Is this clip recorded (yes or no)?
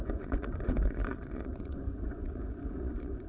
no